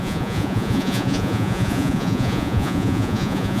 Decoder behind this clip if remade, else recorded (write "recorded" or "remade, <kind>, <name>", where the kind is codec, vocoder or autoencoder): remade, vocoder, Vocos